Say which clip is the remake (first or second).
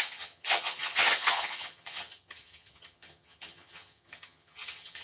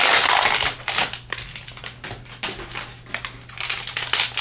first